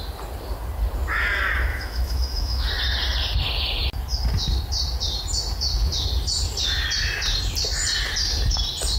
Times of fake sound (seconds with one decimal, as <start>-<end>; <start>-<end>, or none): 1.7-2.7